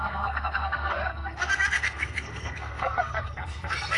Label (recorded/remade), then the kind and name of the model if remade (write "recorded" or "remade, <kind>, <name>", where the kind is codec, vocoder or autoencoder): remade, codec, SNAC